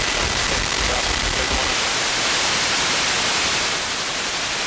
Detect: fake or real real